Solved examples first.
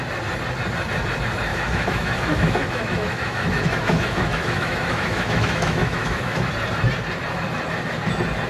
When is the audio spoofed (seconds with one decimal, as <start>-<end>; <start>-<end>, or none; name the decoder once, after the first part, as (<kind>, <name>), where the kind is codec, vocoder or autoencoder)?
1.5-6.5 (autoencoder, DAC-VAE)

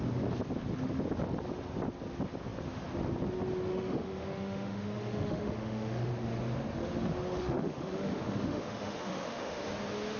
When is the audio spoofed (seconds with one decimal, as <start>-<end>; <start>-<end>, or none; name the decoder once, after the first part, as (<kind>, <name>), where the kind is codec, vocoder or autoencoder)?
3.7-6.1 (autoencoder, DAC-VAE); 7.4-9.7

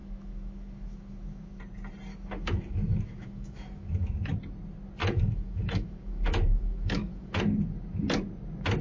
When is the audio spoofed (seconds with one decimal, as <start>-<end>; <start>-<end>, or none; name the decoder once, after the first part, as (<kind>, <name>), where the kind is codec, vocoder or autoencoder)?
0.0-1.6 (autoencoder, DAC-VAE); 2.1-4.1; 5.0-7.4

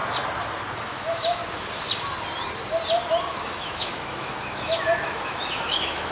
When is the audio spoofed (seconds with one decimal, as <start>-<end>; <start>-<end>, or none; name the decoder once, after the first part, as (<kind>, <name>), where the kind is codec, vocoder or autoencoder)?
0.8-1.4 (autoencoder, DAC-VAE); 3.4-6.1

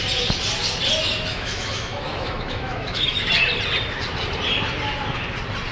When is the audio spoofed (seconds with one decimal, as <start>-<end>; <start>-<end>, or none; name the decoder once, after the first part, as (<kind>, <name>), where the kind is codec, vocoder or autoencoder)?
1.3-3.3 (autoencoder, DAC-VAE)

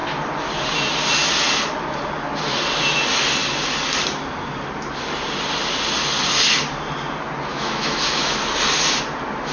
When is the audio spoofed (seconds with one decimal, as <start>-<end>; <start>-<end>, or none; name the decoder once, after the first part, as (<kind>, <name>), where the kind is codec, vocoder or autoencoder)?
7.5-8.4 (autoencoder, DAC-VAE)

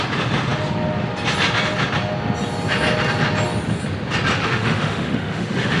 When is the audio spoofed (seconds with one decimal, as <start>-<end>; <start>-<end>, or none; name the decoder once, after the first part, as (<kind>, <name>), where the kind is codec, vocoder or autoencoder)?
4.4-5.8 (autoencoder, DAC-VAE)